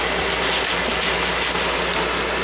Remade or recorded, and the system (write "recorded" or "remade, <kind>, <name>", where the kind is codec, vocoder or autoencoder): recorded